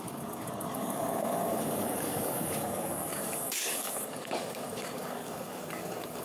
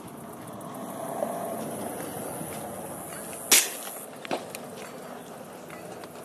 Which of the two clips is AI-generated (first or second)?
first